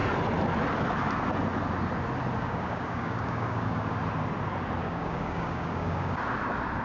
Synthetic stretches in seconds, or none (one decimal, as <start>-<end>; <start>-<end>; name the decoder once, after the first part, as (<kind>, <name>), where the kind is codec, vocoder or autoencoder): 2.4-4.0 (codec, DAC); 4.8-6.2